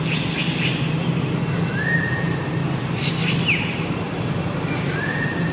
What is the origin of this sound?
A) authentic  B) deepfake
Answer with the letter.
A